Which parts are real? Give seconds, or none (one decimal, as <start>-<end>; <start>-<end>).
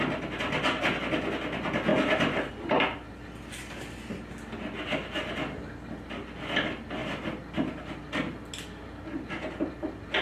0.0-1.9; 2.5-10.2